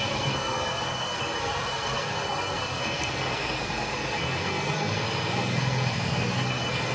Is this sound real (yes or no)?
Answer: no